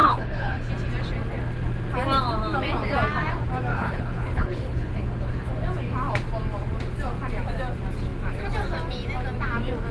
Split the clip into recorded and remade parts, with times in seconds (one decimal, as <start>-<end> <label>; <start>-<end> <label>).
0.0-0.7 remade; 0.7-3.7 recorded; 3.7-5.3 remade; 5.3-9.9 recorded